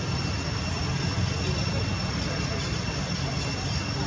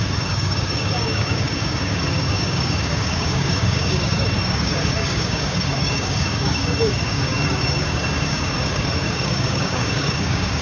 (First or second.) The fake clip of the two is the second